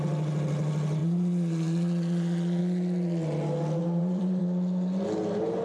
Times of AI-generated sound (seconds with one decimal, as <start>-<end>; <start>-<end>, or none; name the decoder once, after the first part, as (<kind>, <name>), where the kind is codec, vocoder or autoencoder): 3.8-4.4 (vocoder, BigVGAN v2)